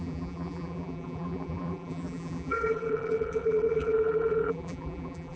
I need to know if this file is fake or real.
fake